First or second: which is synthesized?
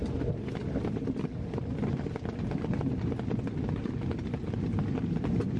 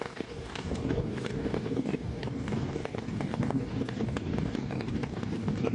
second